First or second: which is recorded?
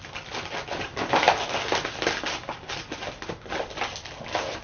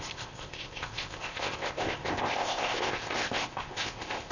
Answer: first